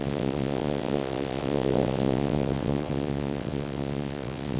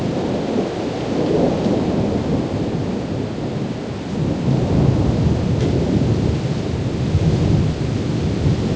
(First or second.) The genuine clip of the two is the second